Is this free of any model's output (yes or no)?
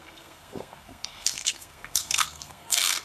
no